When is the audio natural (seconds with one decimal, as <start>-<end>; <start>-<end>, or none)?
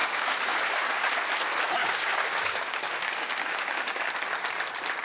1.1-1.8; 4.1-5.0